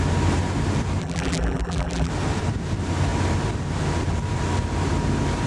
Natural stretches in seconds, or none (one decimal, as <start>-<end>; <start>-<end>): 0.0-1.0; 2.1-5.5